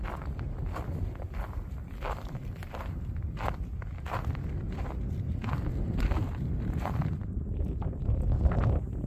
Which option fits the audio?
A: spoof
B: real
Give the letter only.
B